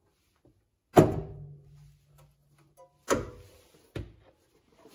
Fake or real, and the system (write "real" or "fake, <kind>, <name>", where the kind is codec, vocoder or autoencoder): real